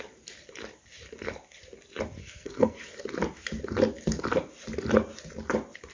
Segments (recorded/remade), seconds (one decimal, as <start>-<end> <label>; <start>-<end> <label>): 0.0-2.2 recorded; 2.2-2.8 remade; 2.8-5.9 recorded